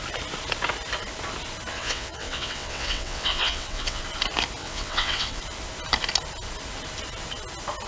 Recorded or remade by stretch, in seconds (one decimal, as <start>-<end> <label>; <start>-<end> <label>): 0.0-1.7 recorded; 1.7-4.0 remade; 4.0-4.6 recorded; 4.6-5.4 remade; 5.4-7.9 recorded